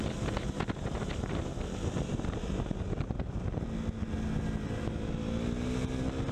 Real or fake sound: real